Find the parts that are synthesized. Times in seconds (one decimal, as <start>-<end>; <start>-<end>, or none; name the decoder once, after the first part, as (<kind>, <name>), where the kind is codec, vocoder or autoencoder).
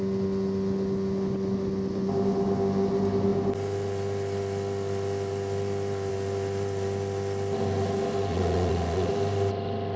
8.3-9.1 (vocoder, Vocos)